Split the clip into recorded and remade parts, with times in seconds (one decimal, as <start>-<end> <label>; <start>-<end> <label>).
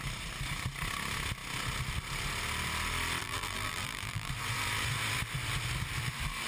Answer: 0.0-3.2 recorded; 3.2-4.3 remade; 4.3-6.5 recorded